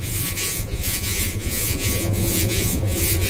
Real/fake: fake